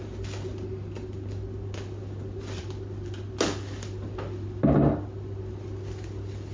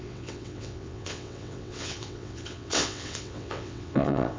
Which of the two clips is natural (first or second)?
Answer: first